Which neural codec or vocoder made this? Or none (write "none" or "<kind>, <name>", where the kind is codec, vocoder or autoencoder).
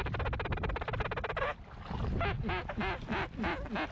none